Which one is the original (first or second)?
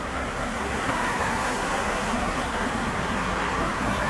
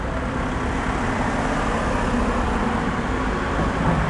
second